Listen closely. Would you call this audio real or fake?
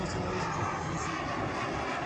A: real